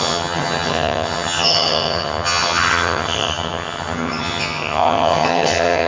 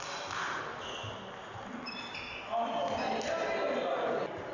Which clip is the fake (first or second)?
first